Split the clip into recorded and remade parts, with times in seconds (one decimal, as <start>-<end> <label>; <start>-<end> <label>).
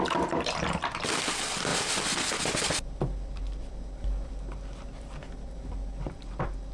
0.0-6.7 recorded